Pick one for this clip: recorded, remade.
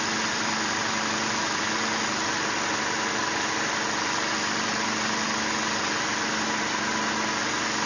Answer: recorded